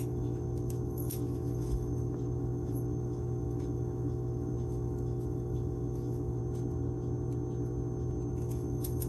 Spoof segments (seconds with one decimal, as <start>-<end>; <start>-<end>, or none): 0.0-6.4; 8.3-9.1